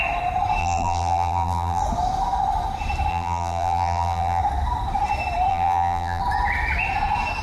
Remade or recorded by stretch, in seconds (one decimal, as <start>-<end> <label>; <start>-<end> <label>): 0.0-0.6 recorded; 0.6-1.8 remade; 1.8-3.1 recorded; 3.1-4.4 remade; 4.4-5.5 recorded; 5.5-6.2 remade; 6.2-7.4 recorded